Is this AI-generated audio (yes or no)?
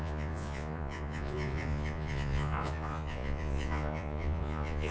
yes